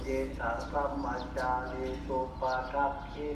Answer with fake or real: real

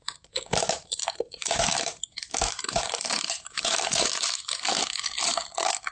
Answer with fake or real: fake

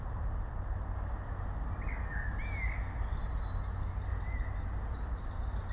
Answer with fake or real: real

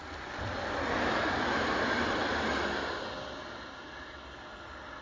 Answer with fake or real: real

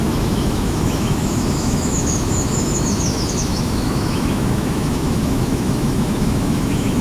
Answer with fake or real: fake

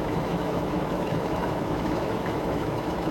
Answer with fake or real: fake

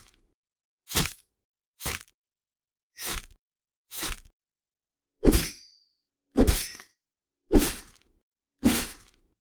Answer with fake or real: fake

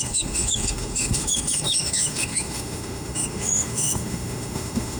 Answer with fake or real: fake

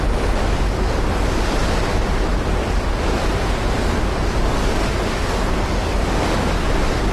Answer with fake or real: real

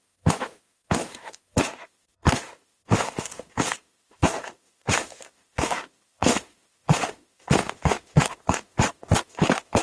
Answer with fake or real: fake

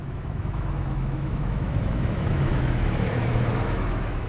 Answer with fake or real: fake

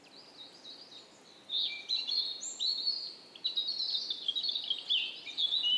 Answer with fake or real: real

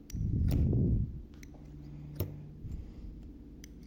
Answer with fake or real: real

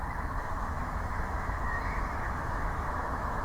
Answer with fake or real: fake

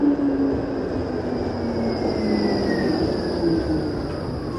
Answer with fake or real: real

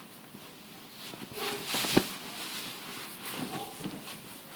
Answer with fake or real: real